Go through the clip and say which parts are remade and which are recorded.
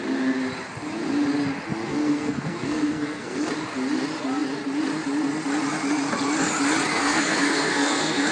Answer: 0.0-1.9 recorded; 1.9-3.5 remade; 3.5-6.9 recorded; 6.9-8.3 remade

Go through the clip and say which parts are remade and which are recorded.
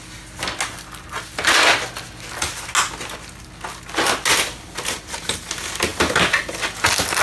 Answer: 0.0-7.2 recorded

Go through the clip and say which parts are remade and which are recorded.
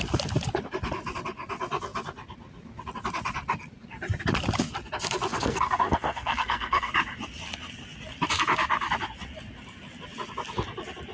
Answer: 0.0-5.3 recorded; 5.3-6.9 remade; 6.9-11.1 recorded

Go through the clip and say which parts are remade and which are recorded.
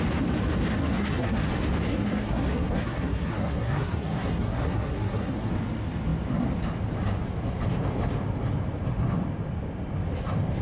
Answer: 0.0-0.8 recorded; 0.8-1.5 remade; 1.5-1.9 recorded; 1.9-5.5 remade; 5.5-10.6 recorded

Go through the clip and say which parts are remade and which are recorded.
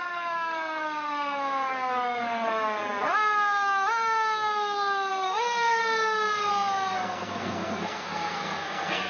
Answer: 0.0-5.8 remade; 5.8-6.5 recorded; 6.5-9.1 remade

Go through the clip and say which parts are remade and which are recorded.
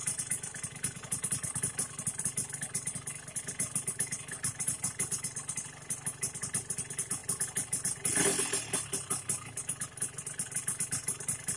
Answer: 0.0-11.6 recorded